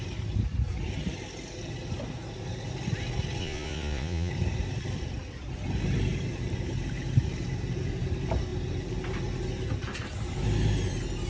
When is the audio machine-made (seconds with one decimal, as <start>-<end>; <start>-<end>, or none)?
3.4-4.3